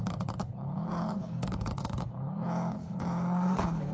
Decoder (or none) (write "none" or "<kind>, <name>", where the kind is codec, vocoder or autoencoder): codec, HILCodec